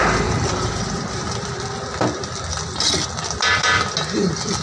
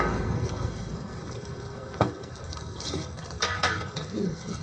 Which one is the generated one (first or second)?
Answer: second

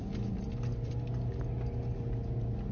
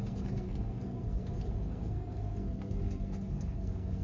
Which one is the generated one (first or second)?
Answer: second